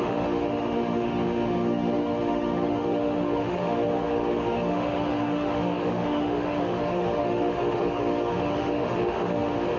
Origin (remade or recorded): remade